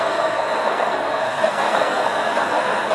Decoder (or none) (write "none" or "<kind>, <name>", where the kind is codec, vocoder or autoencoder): codec, SNAC